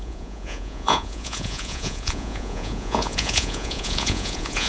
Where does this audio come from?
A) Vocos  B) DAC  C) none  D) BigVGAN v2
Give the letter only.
A